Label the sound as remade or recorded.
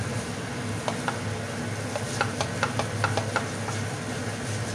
recorded